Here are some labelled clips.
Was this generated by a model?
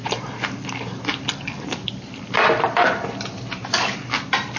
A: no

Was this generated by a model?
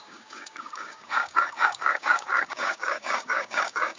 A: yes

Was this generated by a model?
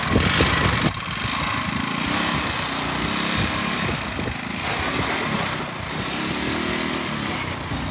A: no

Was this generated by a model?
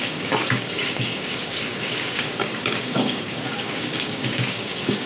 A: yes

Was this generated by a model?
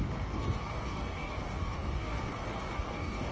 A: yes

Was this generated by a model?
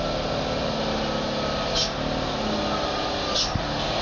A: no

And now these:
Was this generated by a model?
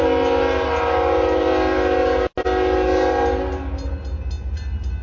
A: no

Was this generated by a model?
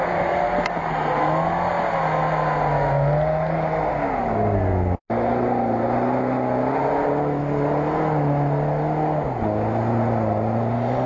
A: no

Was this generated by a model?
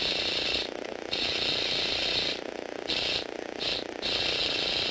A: no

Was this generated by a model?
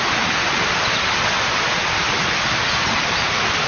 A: no